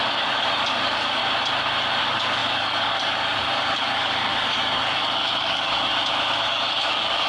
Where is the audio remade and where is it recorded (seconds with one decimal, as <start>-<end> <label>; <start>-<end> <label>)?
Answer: 0.0-1.2 remade; 1.2-2.0 recorded; 2.0-5.9 remade; 5.9-6.4 recorded; 6.4-7.3 remade